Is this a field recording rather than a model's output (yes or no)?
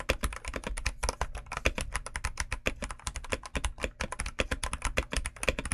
yes